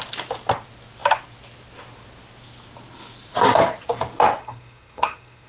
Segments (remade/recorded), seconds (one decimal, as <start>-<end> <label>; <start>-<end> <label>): 0.0-4.4 recorded; 4.4-5.5 remade